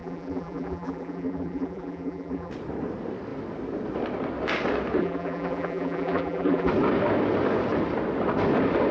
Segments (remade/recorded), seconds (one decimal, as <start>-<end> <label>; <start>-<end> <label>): 0.0-2.5 remade; 2.5-5.0 recorded; 5.0-6.7 remade; 6.7-8.9 recorded